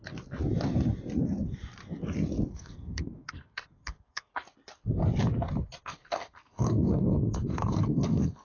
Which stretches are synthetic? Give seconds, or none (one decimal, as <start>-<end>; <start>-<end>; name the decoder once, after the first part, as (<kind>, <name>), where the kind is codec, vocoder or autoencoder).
2.5-4.3 (codec, SNAC); 5.8-8.4